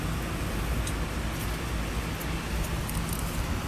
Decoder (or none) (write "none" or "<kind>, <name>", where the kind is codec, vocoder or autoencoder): none